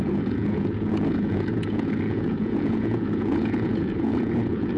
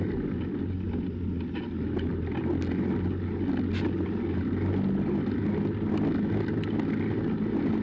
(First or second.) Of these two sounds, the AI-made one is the first